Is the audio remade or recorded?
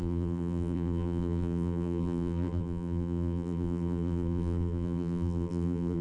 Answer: remade